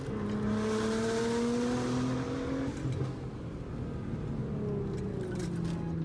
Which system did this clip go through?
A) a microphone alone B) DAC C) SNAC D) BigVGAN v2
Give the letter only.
A